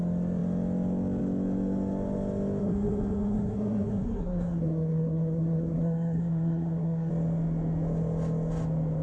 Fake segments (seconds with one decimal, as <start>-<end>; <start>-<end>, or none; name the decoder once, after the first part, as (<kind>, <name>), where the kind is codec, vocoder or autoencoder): 2.6-7.1 (codec, SNAC)